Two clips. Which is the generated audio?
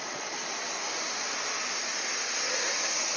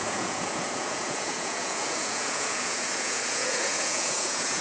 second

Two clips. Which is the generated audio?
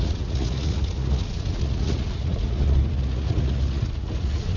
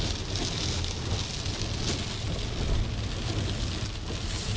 first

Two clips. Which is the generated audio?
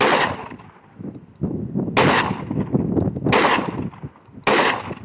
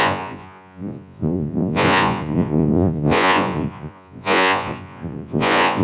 second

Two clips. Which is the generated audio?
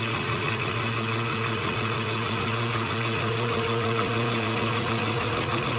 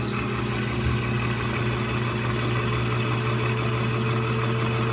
first